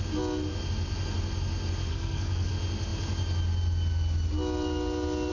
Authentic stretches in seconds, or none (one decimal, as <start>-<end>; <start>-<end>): 0.0-1.9; 2.5-5.3